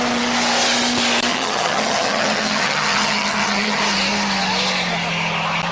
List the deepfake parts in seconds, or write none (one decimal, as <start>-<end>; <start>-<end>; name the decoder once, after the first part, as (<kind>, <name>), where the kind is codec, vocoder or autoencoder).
1.3-3.8 (vocoder, HiFi-GAN)